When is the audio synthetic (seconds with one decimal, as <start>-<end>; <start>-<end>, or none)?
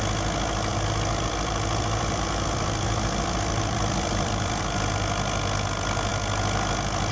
0.7-4.6